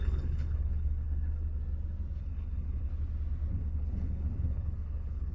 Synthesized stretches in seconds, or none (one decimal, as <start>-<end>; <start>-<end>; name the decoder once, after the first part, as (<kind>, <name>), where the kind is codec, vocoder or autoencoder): 0.0-1.6 (codec, HILCodec); 2.2-2.9; 3.5-5.3